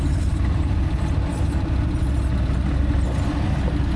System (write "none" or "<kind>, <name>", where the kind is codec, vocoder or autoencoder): none